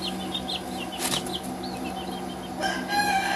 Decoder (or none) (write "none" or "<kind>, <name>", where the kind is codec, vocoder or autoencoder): none